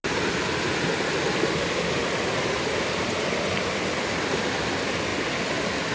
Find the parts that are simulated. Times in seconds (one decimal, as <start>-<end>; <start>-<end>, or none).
none